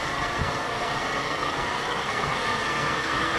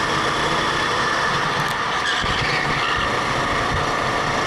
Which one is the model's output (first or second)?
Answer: first